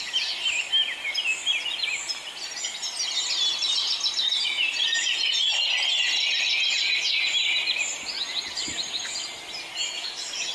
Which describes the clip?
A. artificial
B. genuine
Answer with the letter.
B